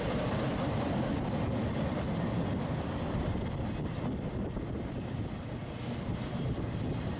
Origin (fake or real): real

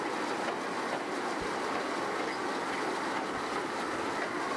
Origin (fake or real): real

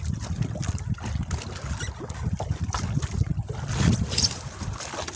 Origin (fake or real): real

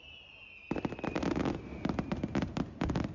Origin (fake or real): real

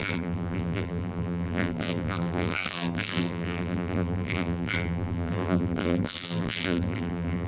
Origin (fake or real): fake